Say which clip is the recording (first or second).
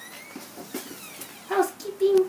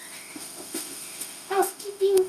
first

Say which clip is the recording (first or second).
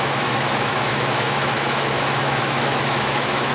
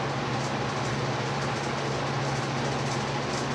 second